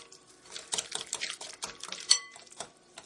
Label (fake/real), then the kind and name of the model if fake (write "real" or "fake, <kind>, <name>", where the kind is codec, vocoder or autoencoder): fake, vocoder, BigVGAN v2